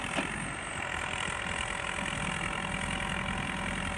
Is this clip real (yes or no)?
yes